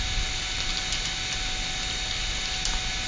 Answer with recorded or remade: recorded